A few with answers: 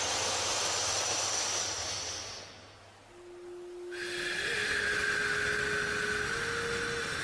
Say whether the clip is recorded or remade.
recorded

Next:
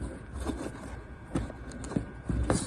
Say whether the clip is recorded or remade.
recorded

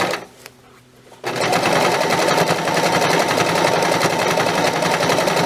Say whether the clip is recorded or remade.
recorded